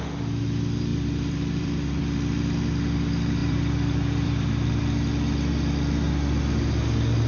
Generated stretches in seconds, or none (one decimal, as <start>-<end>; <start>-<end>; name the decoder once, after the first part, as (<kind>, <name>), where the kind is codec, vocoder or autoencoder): 0.9-2.0 (vocoder, BigVGAN v2); 3.4-4.8